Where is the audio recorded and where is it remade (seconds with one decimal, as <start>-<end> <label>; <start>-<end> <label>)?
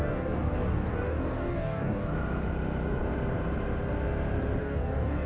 0.0-2.1 remade; 2.1-4.6 recorded; 4.6-5.3 remade